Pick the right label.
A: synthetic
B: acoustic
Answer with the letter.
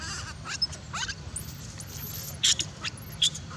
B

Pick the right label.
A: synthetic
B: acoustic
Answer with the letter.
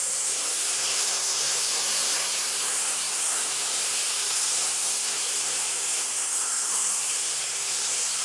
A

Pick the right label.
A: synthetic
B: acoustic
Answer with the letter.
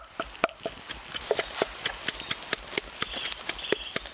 B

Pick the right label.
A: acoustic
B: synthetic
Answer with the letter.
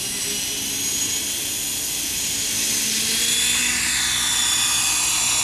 A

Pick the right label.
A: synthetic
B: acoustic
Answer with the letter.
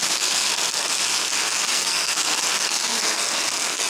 A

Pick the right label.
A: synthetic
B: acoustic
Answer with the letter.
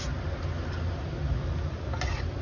B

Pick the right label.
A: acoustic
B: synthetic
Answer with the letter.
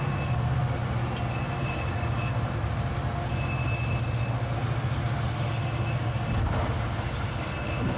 A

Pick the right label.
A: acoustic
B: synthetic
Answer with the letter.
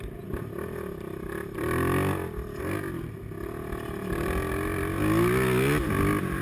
A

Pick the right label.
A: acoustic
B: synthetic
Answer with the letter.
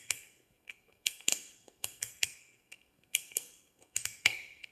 B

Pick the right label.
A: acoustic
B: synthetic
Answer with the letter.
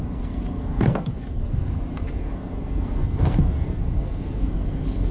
B